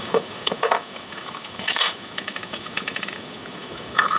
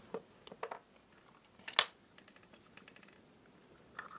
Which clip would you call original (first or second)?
second